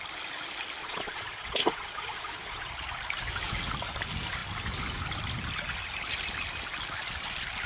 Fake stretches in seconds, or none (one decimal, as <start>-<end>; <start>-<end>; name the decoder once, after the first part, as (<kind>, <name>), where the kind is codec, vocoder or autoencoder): 0.8-2.7 (vocoder, Vocos)